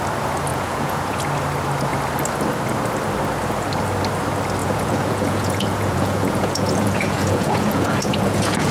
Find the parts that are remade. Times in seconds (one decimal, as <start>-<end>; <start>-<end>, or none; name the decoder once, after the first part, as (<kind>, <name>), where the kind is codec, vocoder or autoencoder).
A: 0.5-1.2 (vocoder, Vocos); 4.6-8.7